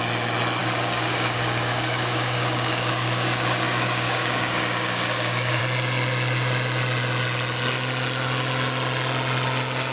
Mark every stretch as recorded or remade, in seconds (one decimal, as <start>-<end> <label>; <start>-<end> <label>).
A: 0.0-0.6 recorded; 0.6-5.6 remade; 5.6-9.9 recorded